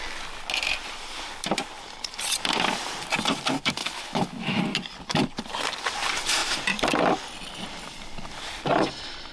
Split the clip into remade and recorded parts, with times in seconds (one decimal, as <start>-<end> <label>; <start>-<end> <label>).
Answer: 0.0-3.8 recorded; 3.8-4.6 remade; 4.6-9.3 recorded